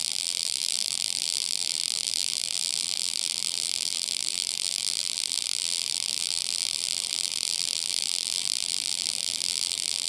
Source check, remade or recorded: remade